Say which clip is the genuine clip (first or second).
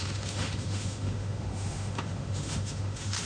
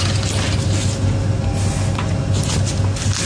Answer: second